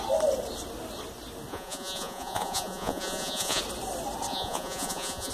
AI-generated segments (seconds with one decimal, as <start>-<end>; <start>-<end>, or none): 1.5-3.6; 4.3-5.3